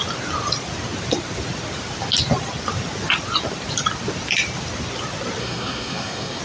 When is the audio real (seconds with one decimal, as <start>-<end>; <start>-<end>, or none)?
0.0-5.4